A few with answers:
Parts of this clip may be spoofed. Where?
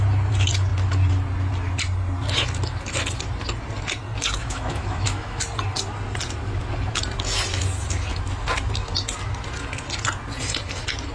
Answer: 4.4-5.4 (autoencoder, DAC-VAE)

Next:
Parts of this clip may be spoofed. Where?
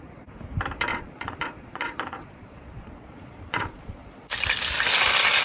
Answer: 0.9-4.1 (vocoder, Vocos)